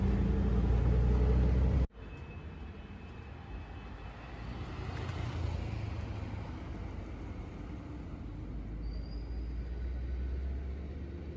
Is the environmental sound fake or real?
real